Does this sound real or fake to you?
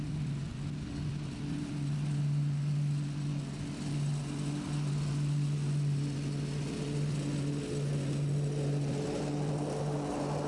real